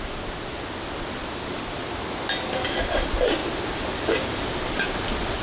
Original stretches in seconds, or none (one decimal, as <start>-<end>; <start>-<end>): 0.0-3.4; 4.5-5.4